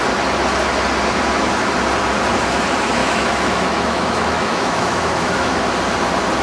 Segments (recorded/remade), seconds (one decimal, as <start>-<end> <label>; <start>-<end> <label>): 0.0-3.0 recorded; 3.0-5.6 remade; 5.6-6.4 recorded